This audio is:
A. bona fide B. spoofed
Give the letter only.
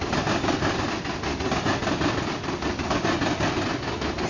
A